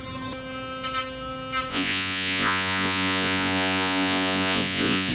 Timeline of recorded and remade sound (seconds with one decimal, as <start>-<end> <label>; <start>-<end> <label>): 0.0-1.7 recorded; 1.7-5.1 remade